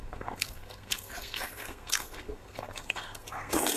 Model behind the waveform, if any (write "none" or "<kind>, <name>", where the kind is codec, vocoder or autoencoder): codec, SNAC